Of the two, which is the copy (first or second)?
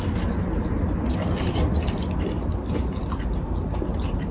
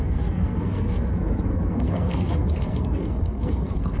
second